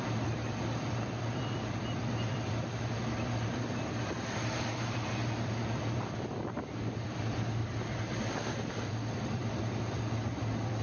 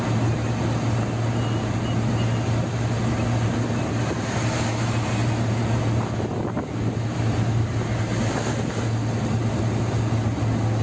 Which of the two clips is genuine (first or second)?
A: second